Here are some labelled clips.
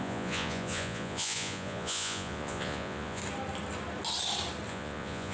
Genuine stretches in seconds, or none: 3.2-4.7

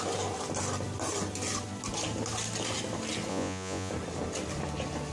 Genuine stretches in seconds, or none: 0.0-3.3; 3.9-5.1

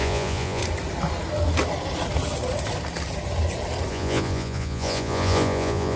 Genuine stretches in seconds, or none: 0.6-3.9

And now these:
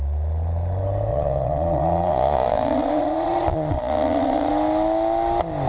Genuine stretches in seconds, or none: 0.0-1.1; 4.5-5.7

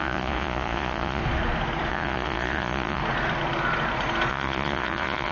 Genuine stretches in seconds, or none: 1.2-1.9; 3.0-4.3